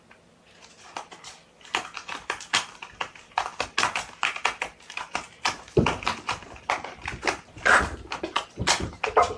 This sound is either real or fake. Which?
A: real